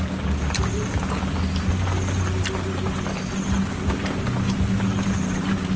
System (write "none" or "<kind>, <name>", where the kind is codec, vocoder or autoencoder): none